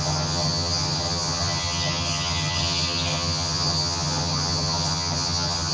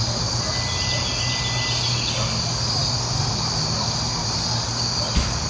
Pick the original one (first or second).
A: second